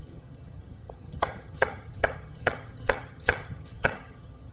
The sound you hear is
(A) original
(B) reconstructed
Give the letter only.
B